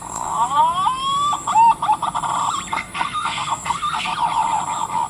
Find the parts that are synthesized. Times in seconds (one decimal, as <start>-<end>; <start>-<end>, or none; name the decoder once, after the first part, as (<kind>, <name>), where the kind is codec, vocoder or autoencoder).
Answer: 0.0-0.6 (codec, SNAC); 2.7-4.1